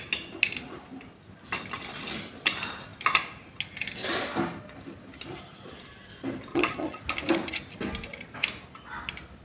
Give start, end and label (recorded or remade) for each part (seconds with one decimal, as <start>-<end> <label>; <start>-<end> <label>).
0.0-6.5 recorded; 6.5-7.0 remade; 7.0-9.4 recorded